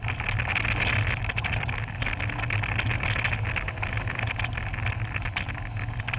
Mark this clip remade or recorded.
recorded